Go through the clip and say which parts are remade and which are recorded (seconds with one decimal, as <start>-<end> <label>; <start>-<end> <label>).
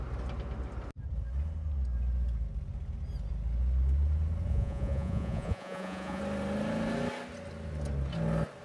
0.0-4.5 recorded; 4.5-6.2 remade; 6.2-8.6 recorded